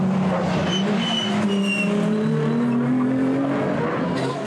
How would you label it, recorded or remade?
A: recorded